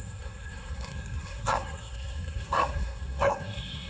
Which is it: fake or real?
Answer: fake